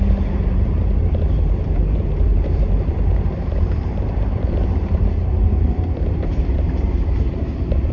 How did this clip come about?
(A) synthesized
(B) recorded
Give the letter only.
A